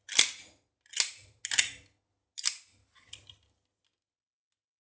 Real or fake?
real